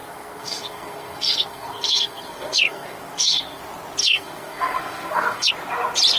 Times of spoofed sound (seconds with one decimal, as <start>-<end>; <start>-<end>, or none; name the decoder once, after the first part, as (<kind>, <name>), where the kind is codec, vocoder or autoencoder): 0.0-3.6 (codec, SNAC); 4.0-5.5